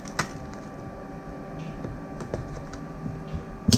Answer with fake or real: real